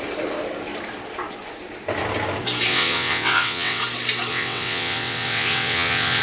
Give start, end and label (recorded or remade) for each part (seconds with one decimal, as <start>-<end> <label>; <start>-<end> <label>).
0.0-2.7 recorded; 2.7-3.8 remade; 3.8-4.3 recorded; 4.3-6.2 remade